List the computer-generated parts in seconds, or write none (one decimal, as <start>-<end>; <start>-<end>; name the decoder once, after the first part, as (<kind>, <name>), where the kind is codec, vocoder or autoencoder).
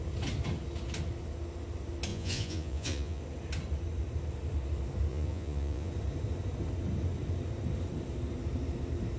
2.1-3.2 (vocoder, Vocos); 5.1-5.9